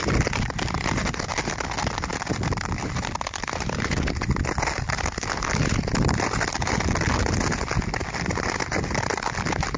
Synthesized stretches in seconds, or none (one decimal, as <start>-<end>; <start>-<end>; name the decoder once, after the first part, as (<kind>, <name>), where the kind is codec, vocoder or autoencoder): none